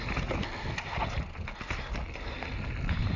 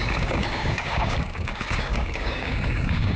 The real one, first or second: first